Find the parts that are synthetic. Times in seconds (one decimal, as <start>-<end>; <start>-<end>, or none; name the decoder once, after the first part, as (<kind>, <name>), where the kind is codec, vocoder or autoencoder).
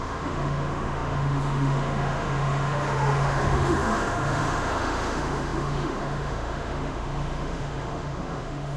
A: 0.0-8.8 (autoencoder, DAC-VAE)